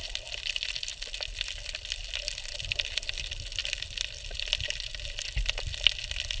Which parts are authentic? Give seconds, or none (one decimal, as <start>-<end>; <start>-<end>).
0.0-6.4